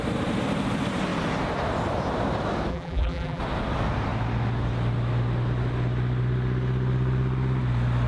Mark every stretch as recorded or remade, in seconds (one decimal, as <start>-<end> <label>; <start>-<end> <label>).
0.0-2.7 recorded; 2.7-3.4 remade; 3.4-8.1 recorded